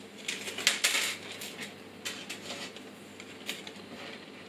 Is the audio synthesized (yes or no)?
no